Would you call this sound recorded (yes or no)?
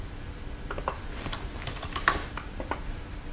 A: yes